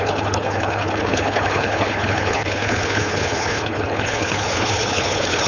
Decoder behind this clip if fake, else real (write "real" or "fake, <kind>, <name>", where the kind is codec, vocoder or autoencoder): fake, codec, HILCodec